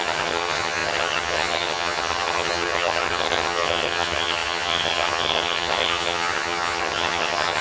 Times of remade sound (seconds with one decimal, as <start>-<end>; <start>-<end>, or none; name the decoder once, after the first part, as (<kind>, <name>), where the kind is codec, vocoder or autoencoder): 0.0-7.6 (vocoder, HiFi-GAN)